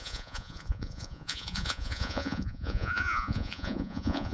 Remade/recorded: remade